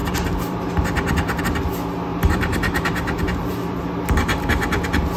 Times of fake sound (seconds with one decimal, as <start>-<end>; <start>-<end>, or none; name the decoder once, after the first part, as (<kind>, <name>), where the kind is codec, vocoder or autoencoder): 0.0-1.4 (vocoder, BigVGAN v2); 2.1-3.8